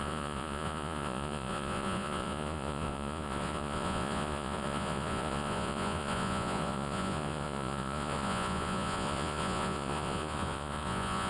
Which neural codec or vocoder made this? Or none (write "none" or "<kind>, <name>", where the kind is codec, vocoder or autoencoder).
vocoder, Vocos